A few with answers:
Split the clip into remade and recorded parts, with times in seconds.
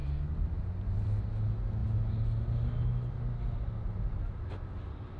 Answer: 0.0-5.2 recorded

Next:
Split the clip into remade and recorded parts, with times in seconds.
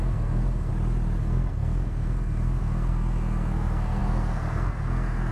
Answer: 0.0-0.7 remade; 0.7-1.2 recorded; 1.2-5.3 remade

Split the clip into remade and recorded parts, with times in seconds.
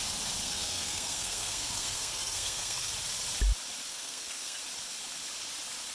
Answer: 0.0-0.4 recorded; 0.4-2.9 remade; 2.9-3.9 recorded; 3.9-4.6 remade; 4.6-5.9 recorded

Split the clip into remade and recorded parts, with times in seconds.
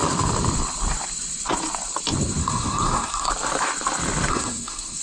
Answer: 0.0-2.4 recorded; 2.4-3.3 remade; 3.3-4.3 recorded; 4.3-5.0 remade